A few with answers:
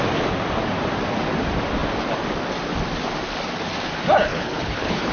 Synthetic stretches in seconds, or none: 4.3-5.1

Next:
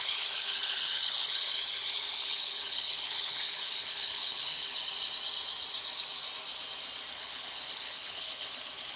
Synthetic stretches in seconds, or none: 0.0-4.8; 7.1-9.0